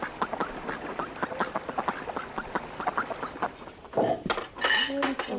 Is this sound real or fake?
real